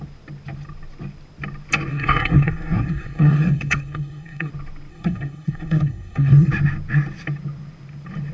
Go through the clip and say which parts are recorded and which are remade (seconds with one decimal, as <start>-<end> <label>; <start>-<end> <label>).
0.0-1.9 recorded; 1.9-4.5 remade; 4.5-4.9 recorded; 4.9-6.5 remade; 6.5-8.3 recorded